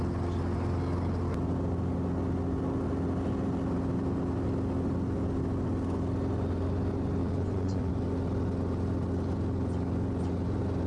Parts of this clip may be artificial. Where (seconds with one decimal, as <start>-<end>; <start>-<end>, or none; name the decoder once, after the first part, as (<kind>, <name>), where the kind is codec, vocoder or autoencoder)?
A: 7.2-7.9 (vocoder, Vocos)